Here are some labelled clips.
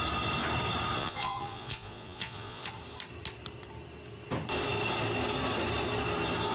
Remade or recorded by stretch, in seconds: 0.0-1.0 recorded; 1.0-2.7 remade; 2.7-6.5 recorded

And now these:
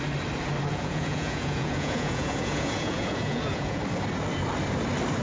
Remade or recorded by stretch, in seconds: 0.0-0.7 recorded; 0.7-3.8 remade; 3.8-5.2 recorded

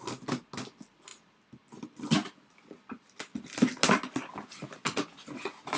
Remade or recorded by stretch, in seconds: 0.0-5.8 recorded

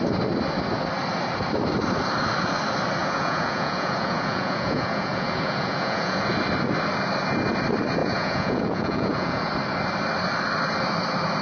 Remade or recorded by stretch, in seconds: 0.0-3.0 recorded; 3.0-6.3 remade; 6.3-8.0 recorded; 8.0-9.5 remade; 9.5-11.4 recorded

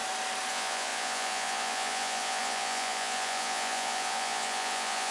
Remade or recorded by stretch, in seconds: 0.0-0.5 recorded; 0.5-5.1 remade

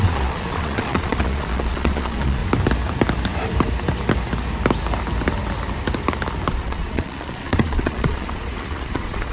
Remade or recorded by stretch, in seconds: 0.0-2.4 remade; 2.4-6.5 recorded; 6.5-9.3 remade